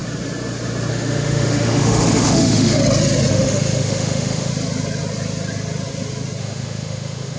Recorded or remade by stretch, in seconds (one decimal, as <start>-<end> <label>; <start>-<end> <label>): 0.0-0.9 recorded; 0.9-2.8 remade; 2.8-3.3 recorded; 3.3-4.5 remade; 4.5-6.4 recorded; 6.4-7.4 remade